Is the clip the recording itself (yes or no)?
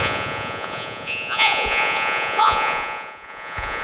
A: no